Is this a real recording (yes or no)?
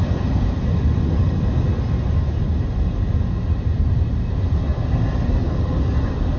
yes